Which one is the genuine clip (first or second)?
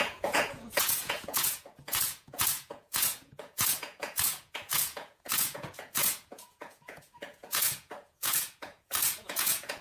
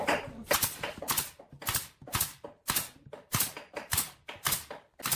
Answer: second